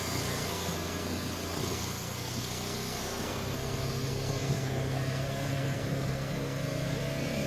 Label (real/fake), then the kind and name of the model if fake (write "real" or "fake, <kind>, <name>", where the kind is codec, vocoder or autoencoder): fake, codec, SNAC